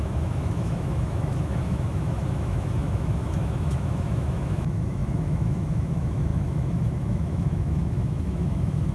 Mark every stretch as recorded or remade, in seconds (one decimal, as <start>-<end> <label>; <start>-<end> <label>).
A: 0.0-8.9 remade